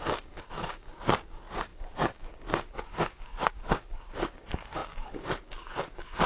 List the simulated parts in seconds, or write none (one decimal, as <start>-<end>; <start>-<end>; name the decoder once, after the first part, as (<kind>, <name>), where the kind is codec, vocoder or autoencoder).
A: 0.0-6.3 (codec, DAC)